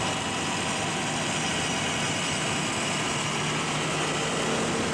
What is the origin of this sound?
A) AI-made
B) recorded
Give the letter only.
B